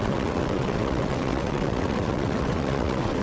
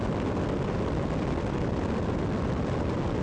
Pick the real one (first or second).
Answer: second